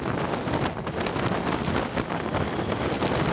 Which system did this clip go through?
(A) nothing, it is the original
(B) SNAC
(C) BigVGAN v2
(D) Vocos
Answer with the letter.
A